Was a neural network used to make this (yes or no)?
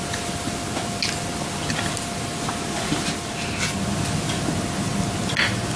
no